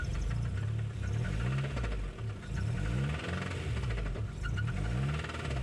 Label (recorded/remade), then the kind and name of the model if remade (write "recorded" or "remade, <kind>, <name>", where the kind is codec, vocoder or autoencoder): recorded